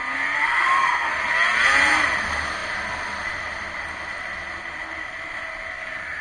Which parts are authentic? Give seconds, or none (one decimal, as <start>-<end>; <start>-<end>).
0.0-0.4; 1.1-6.2